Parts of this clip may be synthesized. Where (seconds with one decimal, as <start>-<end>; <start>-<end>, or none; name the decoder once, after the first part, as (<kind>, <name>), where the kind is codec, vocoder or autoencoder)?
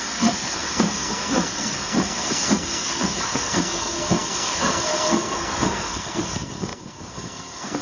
0.0-7.8 (codec, SNAC)